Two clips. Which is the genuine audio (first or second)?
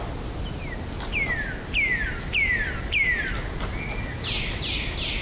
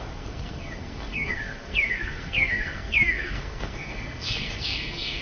first